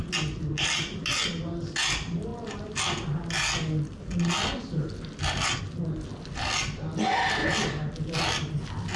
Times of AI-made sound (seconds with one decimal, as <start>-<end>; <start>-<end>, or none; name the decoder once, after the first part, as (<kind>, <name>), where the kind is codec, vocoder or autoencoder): none